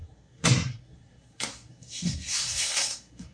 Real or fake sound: fake